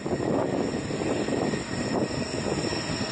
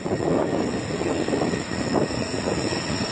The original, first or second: first